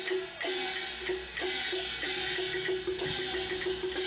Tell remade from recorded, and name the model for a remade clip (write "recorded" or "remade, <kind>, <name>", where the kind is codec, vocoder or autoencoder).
recorded